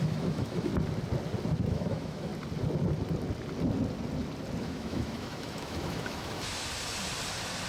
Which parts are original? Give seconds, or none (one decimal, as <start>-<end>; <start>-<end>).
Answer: 0.7-1.7; 2.3-4.6; 6.6-7.7